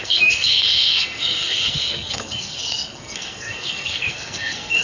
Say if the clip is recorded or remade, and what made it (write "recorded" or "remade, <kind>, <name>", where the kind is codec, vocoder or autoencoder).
remade, codec, SNAC